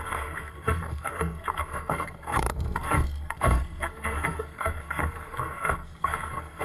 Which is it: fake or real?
fake